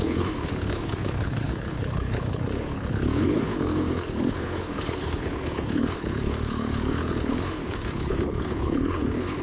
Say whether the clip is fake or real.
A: fake